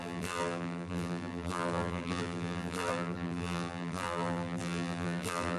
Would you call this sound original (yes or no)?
no